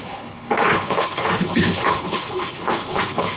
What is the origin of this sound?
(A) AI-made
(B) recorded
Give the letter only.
A